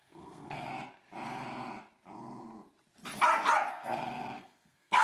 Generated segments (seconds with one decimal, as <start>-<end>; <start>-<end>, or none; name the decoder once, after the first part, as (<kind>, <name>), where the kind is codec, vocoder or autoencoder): 0.0-0.7 (codec, SNAC); 3.7-5.0

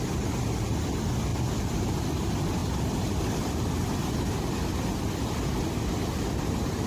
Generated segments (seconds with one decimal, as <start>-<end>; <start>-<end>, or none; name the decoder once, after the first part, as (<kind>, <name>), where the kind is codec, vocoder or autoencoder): none

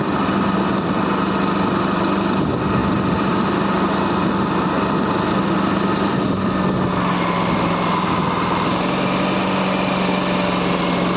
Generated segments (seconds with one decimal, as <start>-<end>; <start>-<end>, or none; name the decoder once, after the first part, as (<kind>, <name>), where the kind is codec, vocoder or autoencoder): none

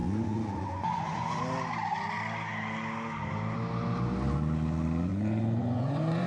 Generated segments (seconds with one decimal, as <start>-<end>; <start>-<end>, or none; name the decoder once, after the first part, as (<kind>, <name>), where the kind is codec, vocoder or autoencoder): 0.0-1.4 (vocoder, Vocos); 5.1-6.3

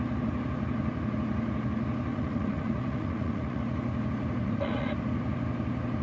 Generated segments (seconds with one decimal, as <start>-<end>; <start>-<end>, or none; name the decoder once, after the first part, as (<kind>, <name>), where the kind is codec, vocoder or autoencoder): 2.1-3.6 (vocoder, Vocos); 4.4-5.0

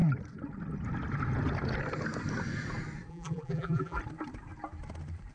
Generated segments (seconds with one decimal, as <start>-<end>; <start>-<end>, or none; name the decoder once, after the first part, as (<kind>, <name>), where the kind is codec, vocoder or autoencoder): 3.1-4.0 (vocoder, BigVGAN v2)

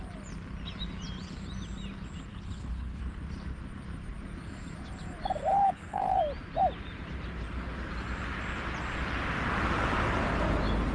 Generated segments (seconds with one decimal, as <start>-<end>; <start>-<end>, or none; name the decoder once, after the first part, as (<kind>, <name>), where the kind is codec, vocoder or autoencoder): 2.3-3.0 (codec, HILCodec); 5.5-6.2

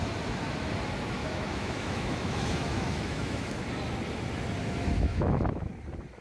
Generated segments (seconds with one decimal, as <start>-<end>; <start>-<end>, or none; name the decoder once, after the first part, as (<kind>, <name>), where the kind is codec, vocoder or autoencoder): 1.2-3.5 (autoencoder, DAC-VAE); 4.6-5.7